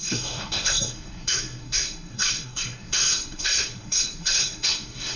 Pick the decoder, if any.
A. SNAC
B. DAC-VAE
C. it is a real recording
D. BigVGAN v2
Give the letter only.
A